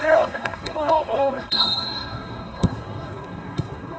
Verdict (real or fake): fake